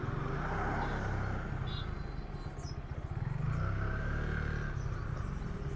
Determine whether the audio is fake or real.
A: real